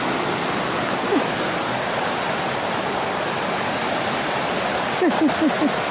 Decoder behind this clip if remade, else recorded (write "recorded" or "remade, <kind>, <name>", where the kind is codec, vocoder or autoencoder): recorded